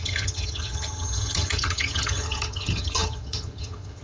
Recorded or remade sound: remade